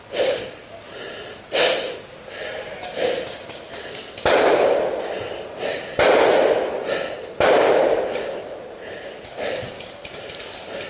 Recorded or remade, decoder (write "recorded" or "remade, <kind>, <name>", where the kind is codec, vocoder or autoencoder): recorded